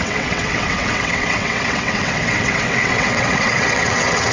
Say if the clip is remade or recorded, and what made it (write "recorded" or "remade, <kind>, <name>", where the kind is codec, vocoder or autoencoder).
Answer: remade, vocoder, WaveNeXt